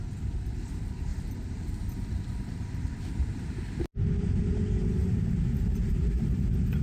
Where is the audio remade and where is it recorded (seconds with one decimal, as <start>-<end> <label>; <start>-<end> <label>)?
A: 0.0-1.1 recorded; 1.1-4.4 remade; 4.4-5.0 recorded; 5.0-6.8 remade